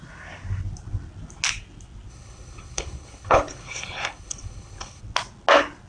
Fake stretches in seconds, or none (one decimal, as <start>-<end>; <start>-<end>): 2.1-5.0